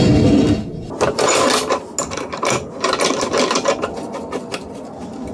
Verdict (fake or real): real